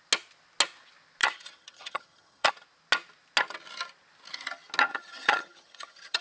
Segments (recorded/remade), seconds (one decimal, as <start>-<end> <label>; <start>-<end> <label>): 0.0-1.2 recorded; 1.2-2.5 remade; 2.5-4.9 recorded; 4.9-6.2 remade